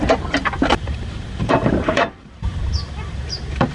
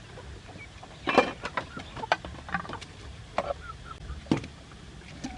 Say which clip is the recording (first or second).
second